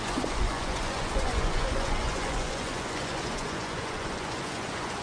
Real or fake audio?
fake